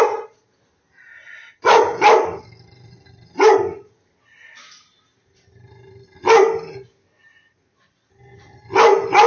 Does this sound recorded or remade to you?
recorded